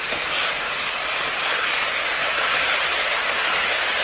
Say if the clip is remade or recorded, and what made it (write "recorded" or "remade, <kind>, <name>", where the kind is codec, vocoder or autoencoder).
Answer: recorded